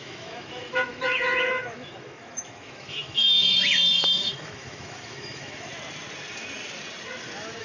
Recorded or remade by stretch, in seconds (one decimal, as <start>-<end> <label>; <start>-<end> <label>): 0.0-5.7 remade; 5.7-7.6 recorded